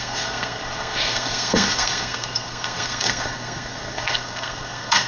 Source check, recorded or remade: remade